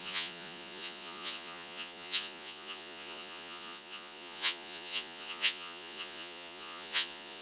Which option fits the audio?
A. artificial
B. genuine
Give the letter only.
A